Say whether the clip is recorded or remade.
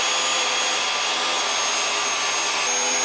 recorded